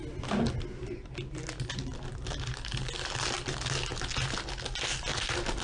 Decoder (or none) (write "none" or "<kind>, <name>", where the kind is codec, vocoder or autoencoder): none